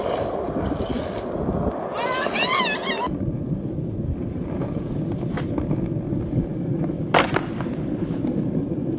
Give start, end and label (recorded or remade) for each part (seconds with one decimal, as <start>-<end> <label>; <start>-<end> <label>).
0.0-4.2 recorded; 4.2-5.0 remade; 5.0-9.0 recorded